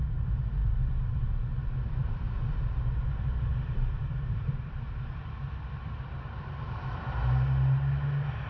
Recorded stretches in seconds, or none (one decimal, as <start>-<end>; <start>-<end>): 0.0-0.6; 1.2-2.0; 2.5-3.5; 7.0-8.5